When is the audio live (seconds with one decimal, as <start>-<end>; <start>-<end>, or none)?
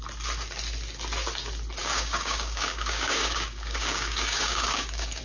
0.0-1.8